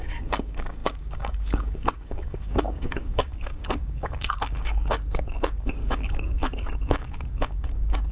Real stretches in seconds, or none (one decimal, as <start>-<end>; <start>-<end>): none